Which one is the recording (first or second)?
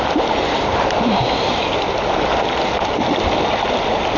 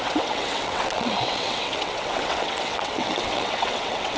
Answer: first